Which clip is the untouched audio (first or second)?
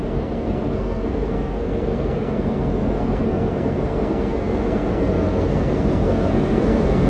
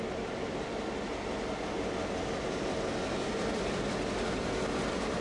second